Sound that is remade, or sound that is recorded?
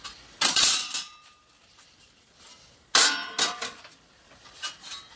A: recorded